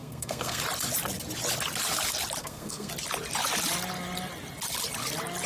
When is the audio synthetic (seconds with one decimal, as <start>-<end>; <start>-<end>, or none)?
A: 0.0-0.6; 2.4-2.9